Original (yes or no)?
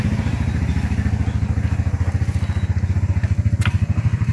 yes